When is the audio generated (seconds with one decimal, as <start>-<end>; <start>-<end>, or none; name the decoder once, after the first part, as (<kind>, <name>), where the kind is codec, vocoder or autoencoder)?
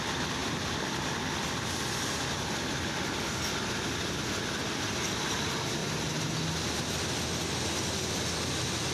5.8-6.3 (vocoder, BigVGAN v2)